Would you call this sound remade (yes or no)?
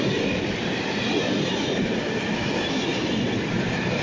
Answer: no